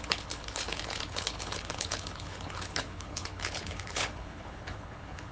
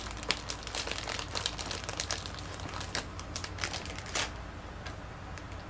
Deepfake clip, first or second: first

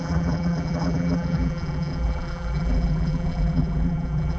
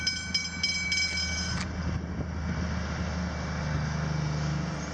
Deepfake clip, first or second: first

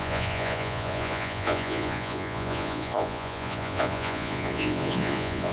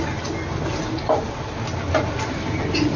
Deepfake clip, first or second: first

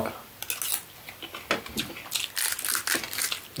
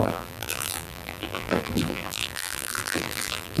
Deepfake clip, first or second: second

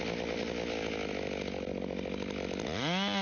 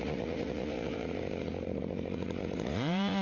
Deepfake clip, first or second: second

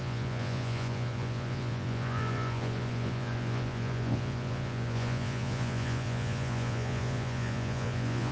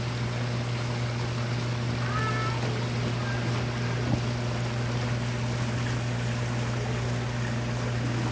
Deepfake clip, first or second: first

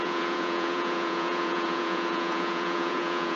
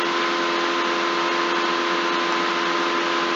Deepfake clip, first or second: first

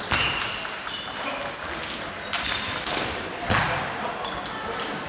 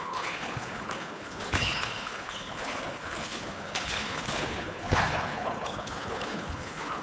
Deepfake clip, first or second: second